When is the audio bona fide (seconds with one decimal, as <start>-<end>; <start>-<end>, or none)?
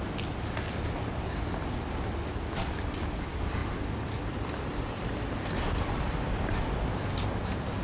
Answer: 0.0-7.8